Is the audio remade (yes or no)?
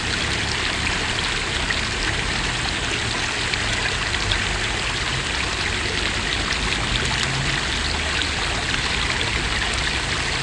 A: no